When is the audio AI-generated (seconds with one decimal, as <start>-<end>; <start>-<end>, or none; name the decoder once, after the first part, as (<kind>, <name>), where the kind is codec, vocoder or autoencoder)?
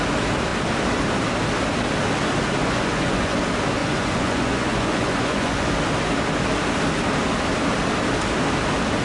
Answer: 2.6-3.4 (vocoder, Vocos); 3.8-5.7